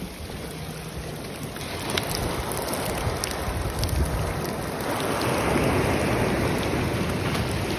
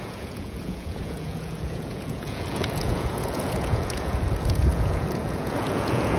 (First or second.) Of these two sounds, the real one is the first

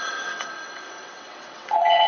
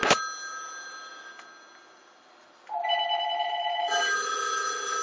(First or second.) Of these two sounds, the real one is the second